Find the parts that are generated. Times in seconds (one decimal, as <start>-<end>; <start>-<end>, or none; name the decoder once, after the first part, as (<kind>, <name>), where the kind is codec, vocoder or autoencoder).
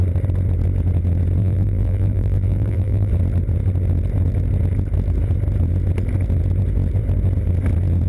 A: 1.4-3.1 (vocoder, BigVGAN v2)